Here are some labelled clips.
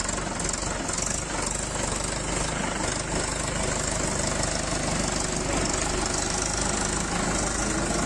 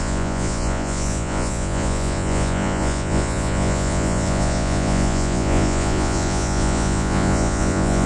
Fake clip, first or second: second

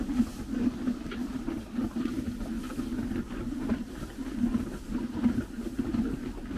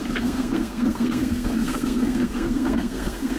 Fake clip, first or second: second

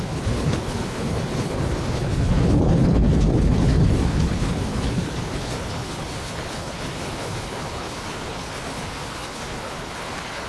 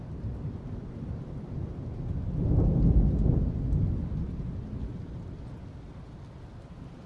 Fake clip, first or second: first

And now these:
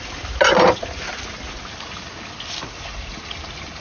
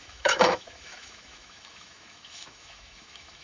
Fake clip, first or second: second